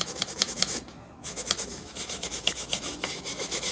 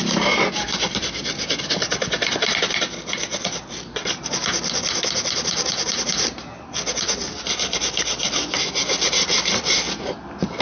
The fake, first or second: first